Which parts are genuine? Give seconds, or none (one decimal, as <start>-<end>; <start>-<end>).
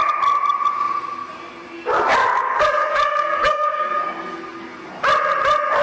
0.0-2.2; 4.0-5.8